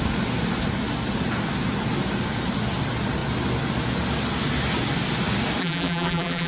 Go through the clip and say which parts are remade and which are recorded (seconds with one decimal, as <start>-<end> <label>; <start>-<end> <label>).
0.0-5.6 recorded; 5.6-6.5 remade